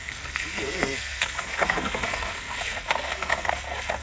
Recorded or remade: remade